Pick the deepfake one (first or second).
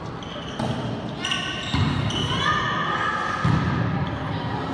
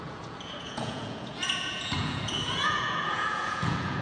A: second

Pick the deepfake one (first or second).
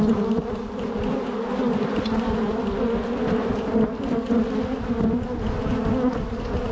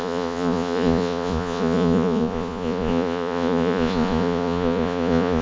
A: second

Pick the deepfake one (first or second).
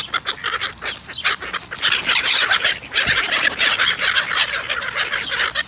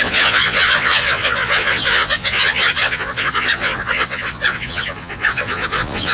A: second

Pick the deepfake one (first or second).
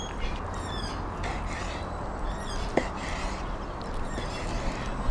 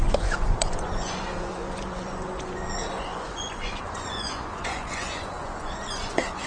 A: second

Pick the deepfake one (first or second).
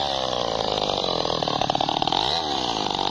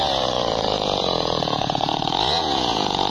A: second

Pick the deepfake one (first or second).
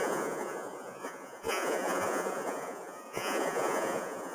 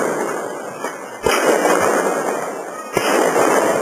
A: first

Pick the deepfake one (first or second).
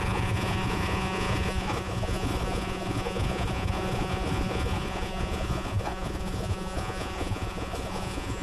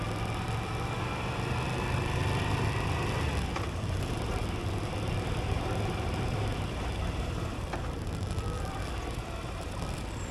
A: first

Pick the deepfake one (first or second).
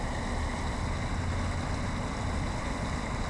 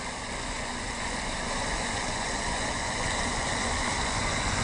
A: second